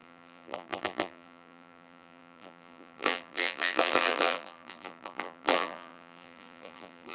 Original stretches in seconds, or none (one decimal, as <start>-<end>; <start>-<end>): none